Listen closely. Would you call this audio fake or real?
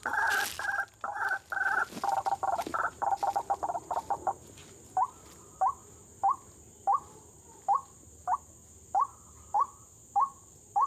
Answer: real